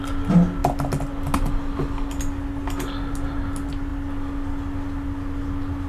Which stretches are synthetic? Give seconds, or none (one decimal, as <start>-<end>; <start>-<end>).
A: none